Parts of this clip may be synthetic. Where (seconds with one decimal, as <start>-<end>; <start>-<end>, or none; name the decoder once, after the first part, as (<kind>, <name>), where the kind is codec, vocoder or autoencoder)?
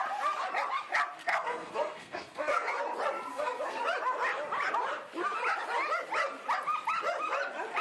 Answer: 1.2-2.8 (codec, SNAC); 3.3-3.8